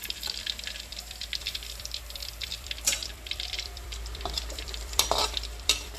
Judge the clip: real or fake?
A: fake